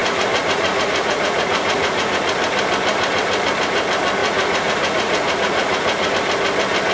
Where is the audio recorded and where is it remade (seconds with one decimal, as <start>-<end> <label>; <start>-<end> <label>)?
0.0-2.2 remade; 2.2-4.2 recorded; 4.2-6.1 remade; 6.1-6.9 recorded